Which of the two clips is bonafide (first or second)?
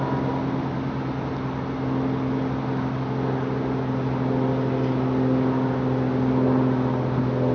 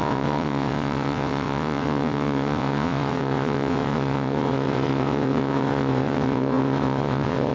first